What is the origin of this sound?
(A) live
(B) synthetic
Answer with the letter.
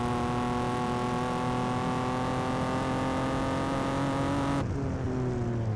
A